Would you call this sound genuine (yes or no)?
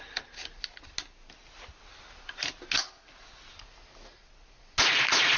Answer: yes